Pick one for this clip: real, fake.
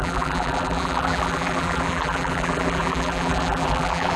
fake